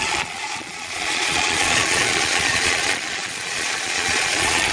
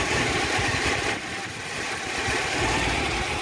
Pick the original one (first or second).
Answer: second